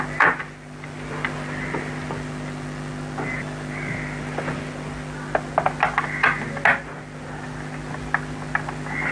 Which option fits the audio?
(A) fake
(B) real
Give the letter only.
B